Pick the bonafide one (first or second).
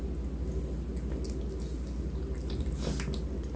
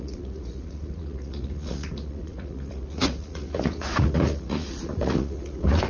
first